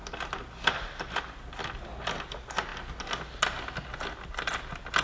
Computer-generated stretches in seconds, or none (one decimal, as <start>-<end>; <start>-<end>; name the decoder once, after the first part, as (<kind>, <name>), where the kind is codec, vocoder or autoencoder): none